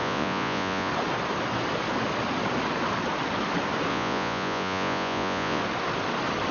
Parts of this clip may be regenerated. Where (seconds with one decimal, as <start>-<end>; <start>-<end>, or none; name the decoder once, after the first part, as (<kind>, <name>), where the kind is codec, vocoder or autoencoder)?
0.0-0.9 (vocoder, Vocos); 3.9-5.6